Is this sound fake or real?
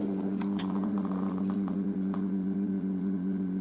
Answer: fake